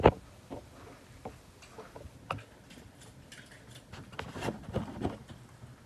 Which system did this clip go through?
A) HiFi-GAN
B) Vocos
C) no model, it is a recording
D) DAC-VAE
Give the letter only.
C